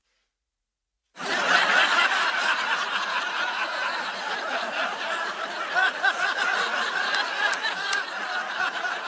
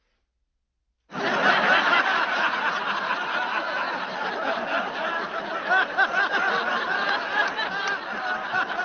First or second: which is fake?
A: first